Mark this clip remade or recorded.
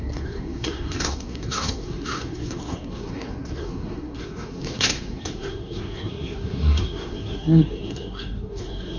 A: remade